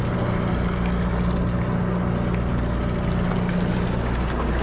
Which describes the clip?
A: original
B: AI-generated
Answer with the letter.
A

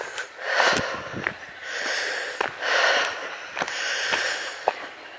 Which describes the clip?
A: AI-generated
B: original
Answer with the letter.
B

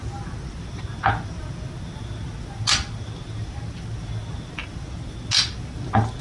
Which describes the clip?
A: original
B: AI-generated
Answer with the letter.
A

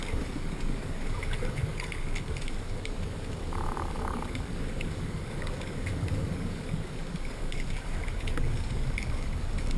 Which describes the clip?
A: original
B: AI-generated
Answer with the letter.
B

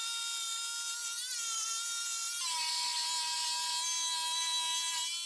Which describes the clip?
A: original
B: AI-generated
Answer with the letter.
A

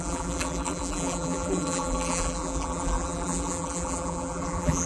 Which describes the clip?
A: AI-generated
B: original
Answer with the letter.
A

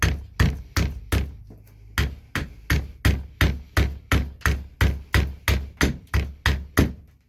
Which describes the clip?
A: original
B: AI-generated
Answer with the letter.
A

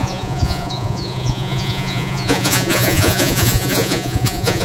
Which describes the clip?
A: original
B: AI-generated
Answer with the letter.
B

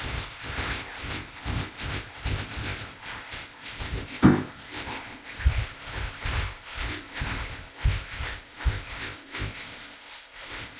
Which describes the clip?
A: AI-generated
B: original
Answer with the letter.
A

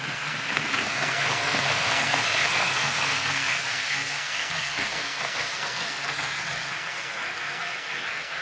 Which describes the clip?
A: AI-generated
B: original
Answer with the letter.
A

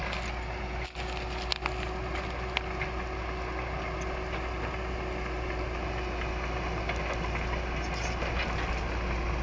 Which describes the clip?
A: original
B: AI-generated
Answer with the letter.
A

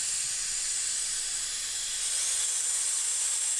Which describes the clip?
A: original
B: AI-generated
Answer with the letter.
A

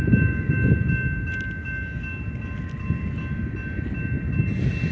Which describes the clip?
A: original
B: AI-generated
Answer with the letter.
A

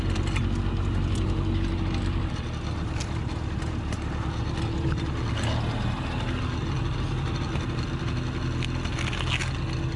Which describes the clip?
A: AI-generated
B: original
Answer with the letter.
B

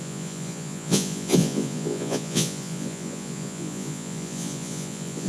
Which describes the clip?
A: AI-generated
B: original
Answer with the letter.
A